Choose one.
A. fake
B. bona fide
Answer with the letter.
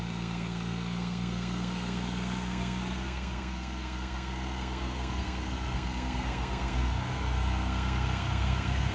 A